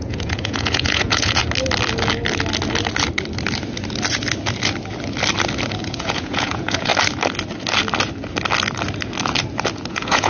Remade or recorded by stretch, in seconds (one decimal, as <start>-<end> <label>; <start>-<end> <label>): 0.0-1.4 remade; 1.4-5.8 recorded; 5.8-6.9 remade; 6.9-9.9 recorded; 9.9-10.3 remade